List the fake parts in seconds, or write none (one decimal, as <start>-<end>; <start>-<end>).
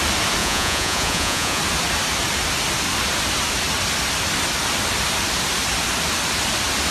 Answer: 0.4-1.6